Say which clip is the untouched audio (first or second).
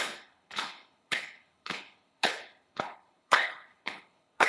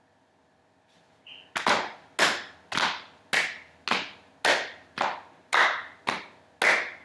second